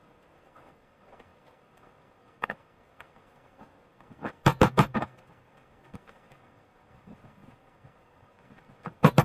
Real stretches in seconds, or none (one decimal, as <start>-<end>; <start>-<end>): none